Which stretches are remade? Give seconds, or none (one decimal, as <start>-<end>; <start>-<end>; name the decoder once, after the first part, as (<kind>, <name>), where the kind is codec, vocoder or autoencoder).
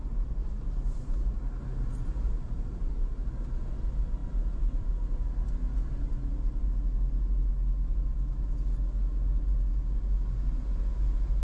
4.2-4.9 (vocoder, BigVGAN v2)